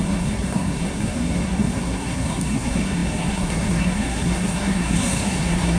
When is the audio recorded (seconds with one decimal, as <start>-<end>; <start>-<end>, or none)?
none